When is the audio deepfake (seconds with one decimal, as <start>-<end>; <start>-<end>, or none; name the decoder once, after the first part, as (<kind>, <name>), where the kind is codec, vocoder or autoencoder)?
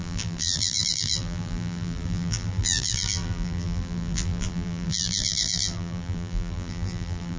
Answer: 0.0-7.4 (vocoder, BigVGAN v2)